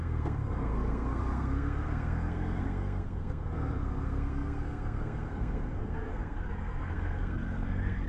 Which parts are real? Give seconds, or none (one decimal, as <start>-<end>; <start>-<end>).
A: none